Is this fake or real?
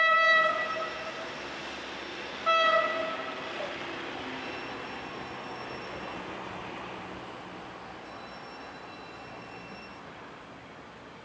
real